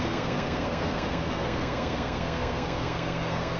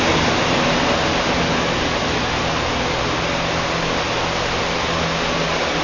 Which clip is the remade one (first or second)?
first